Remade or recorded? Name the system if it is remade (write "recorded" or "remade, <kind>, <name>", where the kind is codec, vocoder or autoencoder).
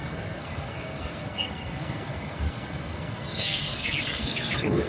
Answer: remade, codec, SNAC